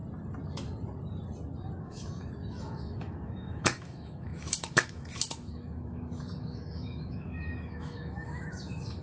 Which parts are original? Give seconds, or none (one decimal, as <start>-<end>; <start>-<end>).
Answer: 0.0-1.8